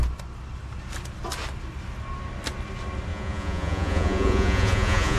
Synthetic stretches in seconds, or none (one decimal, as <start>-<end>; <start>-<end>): 3.1-5.2

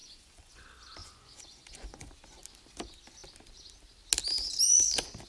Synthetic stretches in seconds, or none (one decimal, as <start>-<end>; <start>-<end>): 0.0-0.6; 1.0-2.1

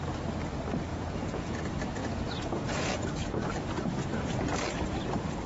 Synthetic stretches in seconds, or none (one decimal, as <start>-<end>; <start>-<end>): 0.9-1.6; 2.0-3.1

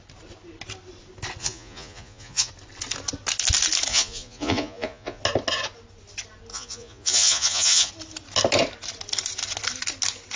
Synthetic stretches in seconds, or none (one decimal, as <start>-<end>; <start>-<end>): 1.4-2.5; 3.9-5.2; 6.5-7.9

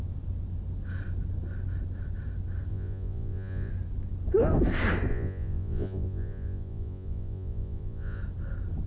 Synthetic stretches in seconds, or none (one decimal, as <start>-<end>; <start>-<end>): 2.7-3.7; 5.1-8.2

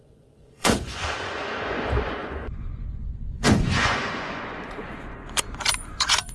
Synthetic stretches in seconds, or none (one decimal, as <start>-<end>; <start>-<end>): 0.0-6.3